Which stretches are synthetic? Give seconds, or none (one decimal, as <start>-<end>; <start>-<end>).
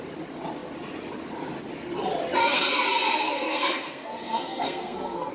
2.4-5.3